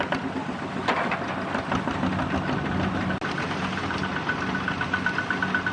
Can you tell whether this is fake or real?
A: real